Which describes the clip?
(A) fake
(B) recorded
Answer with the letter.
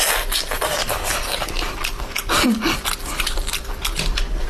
A